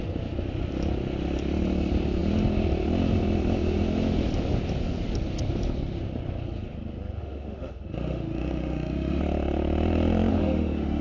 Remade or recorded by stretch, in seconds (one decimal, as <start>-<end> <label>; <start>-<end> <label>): 0.0-7.2 recorded; 7.2-9.2 remade; 9.2-10.3 recorded; 10.3-11.0 remade